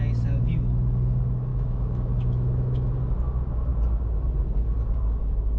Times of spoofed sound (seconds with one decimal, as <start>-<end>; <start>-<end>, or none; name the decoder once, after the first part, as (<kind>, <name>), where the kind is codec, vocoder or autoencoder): 1.5-2.9 (autoencoder, DAC-VAE)